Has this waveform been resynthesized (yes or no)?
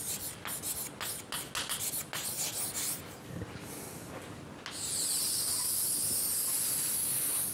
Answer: no